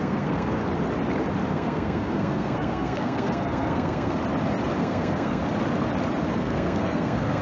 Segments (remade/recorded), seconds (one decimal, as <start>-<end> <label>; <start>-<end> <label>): 0.0-0.6 remade; 0.6-1.5 recorded; 1.5-4.2 remade; 4.2-4.8 recorded; 4.8-5.4 remade; 5.4-6.3 recorded; 6.3-7.4 remade